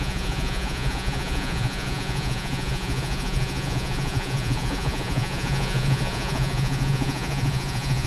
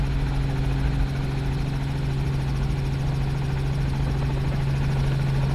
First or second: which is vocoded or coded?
first